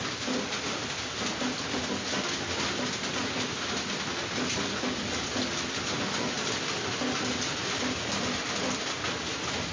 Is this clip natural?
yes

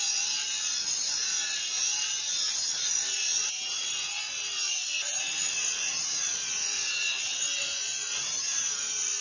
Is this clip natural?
no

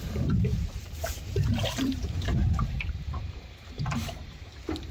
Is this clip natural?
no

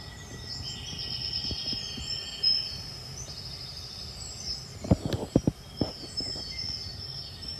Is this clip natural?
yes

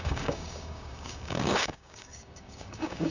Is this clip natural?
no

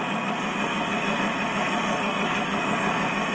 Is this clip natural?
no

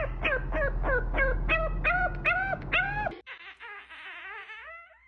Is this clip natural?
yes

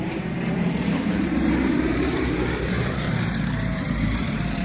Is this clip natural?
no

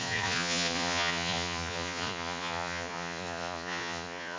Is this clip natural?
no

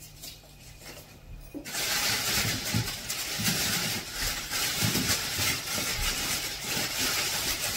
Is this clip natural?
no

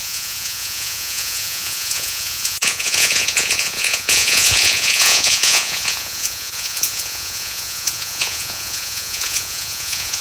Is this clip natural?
no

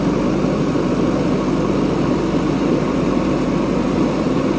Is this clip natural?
yes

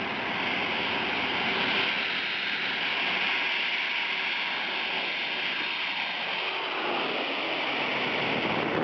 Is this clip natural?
yes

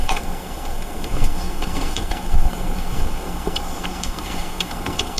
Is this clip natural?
no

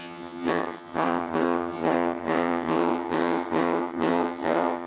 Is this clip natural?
no